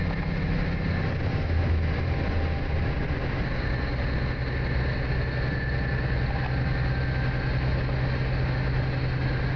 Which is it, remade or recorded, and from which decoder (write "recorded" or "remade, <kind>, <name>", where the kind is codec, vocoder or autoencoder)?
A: recorded